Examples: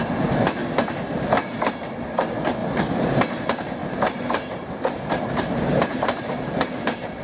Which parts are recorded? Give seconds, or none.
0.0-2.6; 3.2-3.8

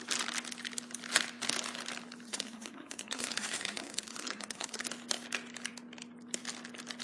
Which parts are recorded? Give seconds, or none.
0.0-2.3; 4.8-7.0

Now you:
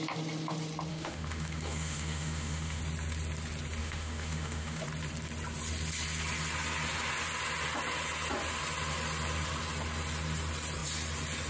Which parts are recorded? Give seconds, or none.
0.0-0.9; 2.8-3.8; 4.8-11.5

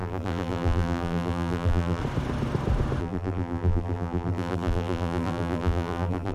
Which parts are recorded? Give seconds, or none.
2.0-3.0